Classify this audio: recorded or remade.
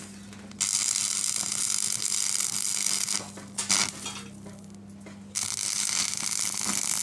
recorded